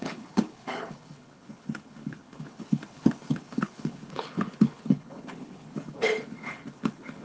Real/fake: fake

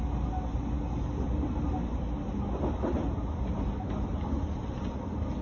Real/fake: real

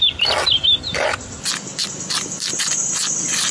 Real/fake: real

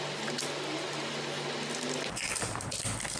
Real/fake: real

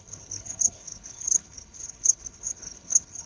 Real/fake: fake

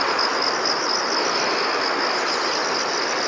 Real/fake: real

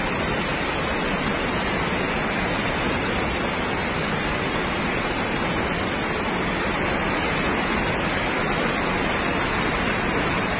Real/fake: real